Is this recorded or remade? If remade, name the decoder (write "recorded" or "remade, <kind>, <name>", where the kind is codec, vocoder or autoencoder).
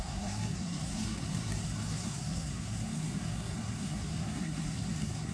remade, codec, SNAC